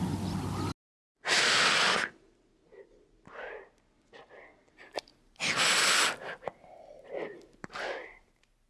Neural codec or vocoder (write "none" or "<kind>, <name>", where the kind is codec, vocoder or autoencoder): none